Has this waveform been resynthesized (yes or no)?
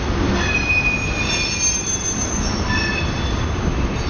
no